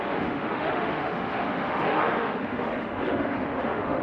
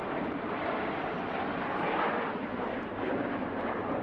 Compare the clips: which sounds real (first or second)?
second